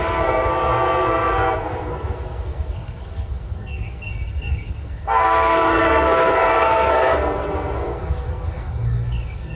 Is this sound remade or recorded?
remade